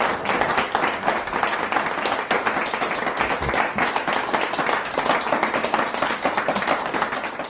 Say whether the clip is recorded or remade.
recorded